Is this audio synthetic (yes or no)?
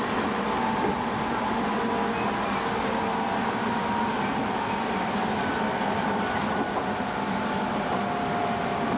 no